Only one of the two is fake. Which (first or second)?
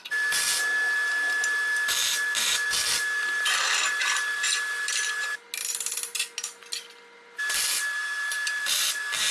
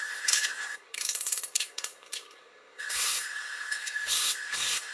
second